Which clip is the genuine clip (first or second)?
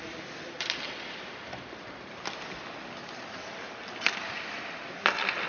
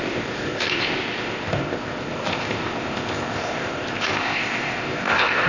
first